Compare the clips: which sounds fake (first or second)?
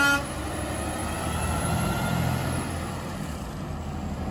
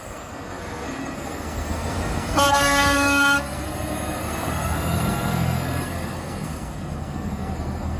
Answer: second